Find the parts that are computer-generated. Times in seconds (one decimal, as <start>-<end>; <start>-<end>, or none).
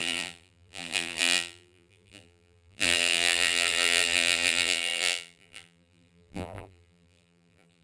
0.0-7.8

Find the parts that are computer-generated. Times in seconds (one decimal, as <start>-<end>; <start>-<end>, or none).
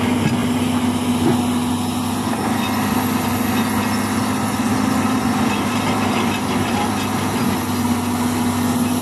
none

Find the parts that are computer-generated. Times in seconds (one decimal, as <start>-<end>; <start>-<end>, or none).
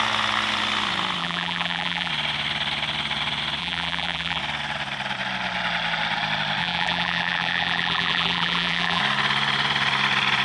1.2-2.1; 3.6-4.4; 6.6-9.0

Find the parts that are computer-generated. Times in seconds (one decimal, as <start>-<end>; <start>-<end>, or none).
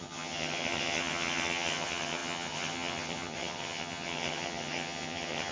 0.0-5.5